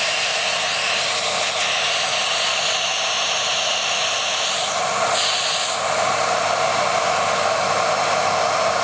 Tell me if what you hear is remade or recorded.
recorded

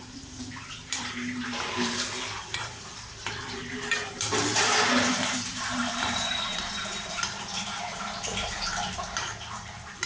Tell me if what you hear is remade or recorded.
remade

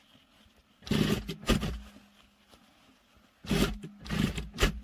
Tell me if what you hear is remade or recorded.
recorded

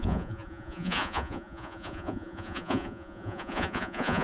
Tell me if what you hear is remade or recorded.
remade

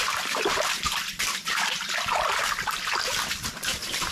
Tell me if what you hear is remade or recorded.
remade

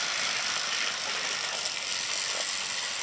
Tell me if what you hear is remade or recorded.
recorded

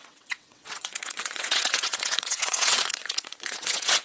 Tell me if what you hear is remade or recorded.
remade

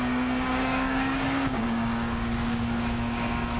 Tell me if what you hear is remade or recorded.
remade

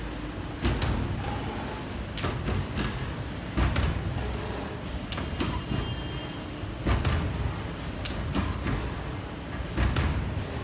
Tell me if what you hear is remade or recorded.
recorded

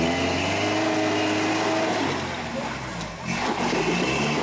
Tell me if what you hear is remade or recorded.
recorded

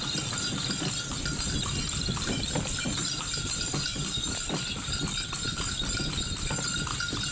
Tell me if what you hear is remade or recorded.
recorded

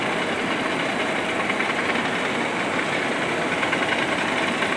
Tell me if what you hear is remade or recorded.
recorded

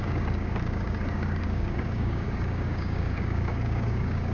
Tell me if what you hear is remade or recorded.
remade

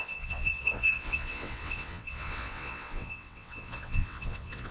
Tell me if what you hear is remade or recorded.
remade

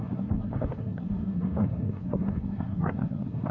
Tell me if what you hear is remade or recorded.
remade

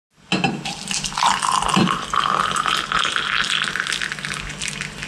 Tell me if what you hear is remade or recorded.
recorded